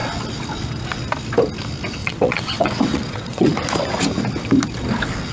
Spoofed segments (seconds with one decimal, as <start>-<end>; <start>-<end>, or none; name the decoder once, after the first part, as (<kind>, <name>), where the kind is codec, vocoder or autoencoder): 2.0-3.5 (vocoder, WaveNeXt)